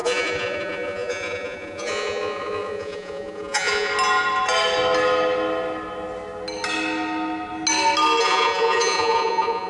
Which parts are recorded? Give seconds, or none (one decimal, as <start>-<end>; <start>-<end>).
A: 3.9-8.2